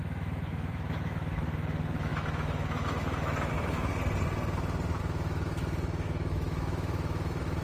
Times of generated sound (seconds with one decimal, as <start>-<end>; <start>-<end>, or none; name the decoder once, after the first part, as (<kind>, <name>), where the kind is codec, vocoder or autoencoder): 0.0-3.9 (autoencoder, DAC-VAE); 5.0-7.6

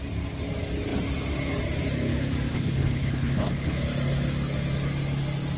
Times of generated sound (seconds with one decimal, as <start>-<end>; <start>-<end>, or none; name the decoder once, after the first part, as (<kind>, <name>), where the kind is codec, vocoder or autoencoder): 2.5-3.8 (codec, HILCodec)

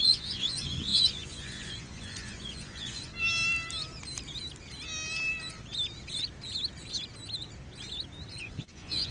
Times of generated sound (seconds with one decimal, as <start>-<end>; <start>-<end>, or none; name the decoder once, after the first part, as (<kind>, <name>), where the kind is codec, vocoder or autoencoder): 0.0-3.1 (vocoder, Vocos); 8.4-9.1

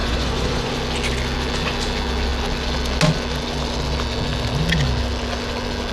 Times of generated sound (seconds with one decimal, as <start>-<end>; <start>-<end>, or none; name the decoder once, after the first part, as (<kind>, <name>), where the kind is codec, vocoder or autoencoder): 0.0-0.7 (vocoder, Vocos)